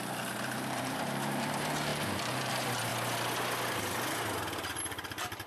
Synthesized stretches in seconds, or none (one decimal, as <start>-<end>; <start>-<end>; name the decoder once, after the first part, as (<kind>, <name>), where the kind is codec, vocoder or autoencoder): 0.0-2.9 (vocoder, BigVGAN v2); 4.8-5.5